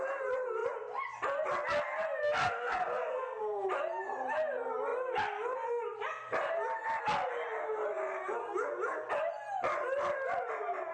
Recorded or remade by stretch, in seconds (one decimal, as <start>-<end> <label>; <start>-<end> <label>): 0.0-2.4 recorded; 2.4-3.4 remade; 3.4-10.9 recorded